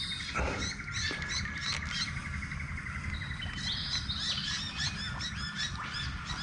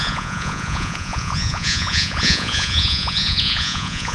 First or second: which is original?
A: first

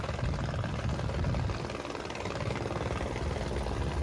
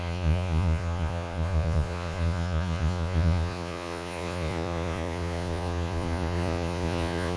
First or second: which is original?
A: first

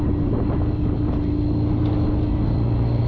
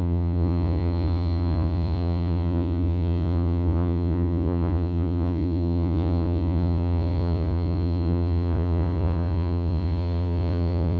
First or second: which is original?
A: first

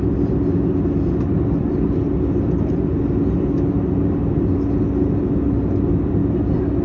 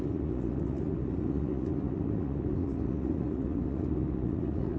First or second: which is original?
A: first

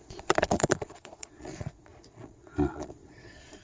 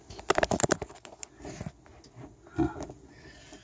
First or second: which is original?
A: second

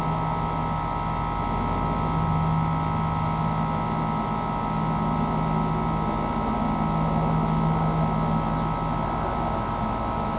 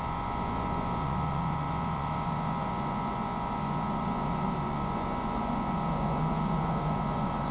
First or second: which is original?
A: first